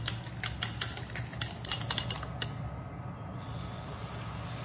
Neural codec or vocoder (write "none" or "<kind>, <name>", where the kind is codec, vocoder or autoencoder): none